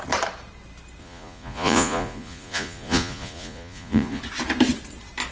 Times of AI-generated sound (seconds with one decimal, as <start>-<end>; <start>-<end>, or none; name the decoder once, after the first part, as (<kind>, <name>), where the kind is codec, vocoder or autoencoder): 1.0-4.2 (vocoder, Vocos)